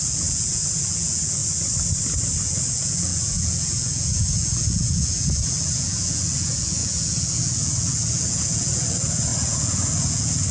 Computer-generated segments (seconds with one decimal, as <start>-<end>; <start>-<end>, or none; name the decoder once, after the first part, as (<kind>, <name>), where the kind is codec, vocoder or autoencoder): 0.0-1.4 (vocoder, Vocos); 2.5-10.5